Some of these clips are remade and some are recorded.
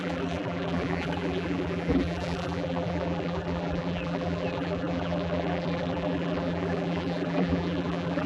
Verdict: remade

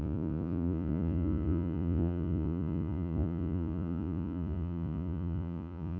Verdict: remade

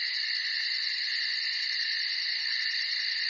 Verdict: recorded